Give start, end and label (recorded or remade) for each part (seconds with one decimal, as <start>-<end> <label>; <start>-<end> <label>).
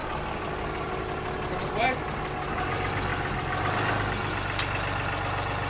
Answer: 0.0-5.7 recorded